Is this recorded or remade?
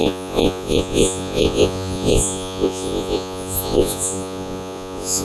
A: remade